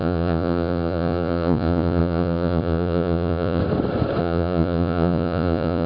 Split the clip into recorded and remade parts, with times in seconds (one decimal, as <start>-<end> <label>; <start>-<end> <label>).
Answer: 0.0-3.6 remade; 3.6-4.2 recorded; 4.2-5.9 remade